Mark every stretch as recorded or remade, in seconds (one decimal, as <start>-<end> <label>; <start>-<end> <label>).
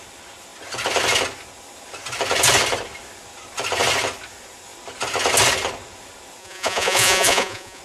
0.0-6.4 recorded; 6.4-7.8 remade